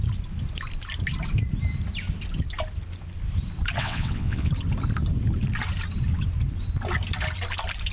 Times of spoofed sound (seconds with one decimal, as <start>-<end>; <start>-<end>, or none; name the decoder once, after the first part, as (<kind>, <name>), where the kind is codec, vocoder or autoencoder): 3.8-4.5 (vocoder, WaveNeXt)